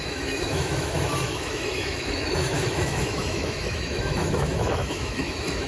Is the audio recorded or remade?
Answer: remade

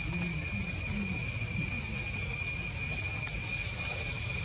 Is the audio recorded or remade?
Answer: recorded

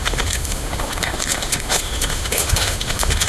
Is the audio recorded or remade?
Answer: remade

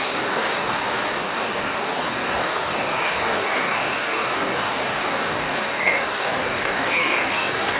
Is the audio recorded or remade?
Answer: remade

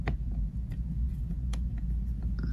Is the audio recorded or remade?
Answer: remade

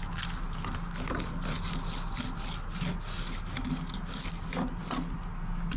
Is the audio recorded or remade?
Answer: recorded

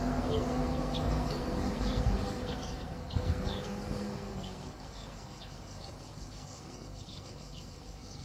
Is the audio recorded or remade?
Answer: remade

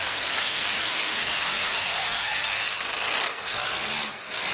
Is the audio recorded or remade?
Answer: remade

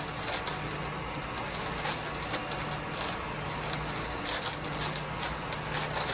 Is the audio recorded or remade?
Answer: recorded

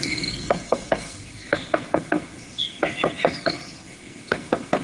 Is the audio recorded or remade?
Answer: remade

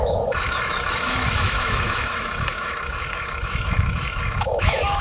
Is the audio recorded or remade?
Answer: remade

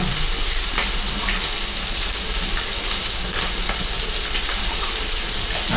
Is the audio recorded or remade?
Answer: recorded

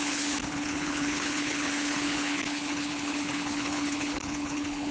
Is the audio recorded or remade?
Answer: remade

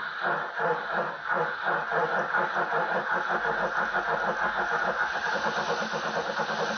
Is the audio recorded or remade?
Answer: recorded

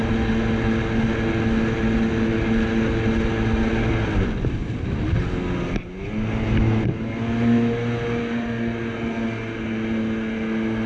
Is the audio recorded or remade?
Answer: recorded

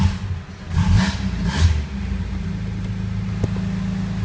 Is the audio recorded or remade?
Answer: recorded